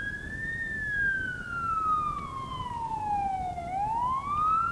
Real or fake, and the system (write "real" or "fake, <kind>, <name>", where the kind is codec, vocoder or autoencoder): real